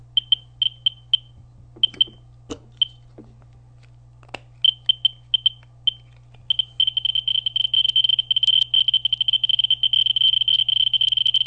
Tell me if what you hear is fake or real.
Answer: real